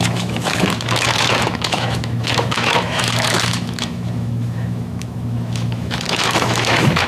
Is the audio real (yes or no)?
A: no